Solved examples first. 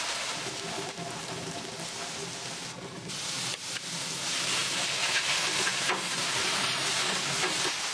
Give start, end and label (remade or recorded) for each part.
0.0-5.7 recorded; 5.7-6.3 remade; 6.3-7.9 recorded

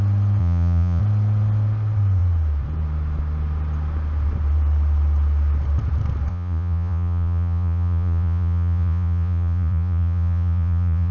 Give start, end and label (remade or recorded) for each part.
0.0-0.4 recorded; 0.4-1.0 remade; 1.0-6.3 recorded; 6.3-11.1 remade

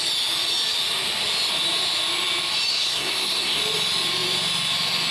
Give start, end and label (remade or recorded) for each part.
0.0-2.7 recorded; 2.7-3.6 remade; 3.6-5.1 recorded

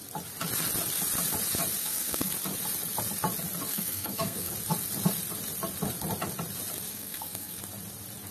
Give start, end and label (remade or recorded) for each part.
0.0-1.8 recorded; 1.8-2.3 remade; 2.3-3.7 recorded; 3.7-4.5 remade; 4.5-6.9 recorded; 6.9-7.6 remade; 7.6-8.3 recorded

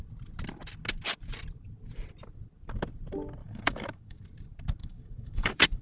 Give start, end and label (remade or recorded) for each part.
0.0-3.4 recorded; 3.4-4.2 remade; 4.2-4.8 recorded; 4.8-5.8 remade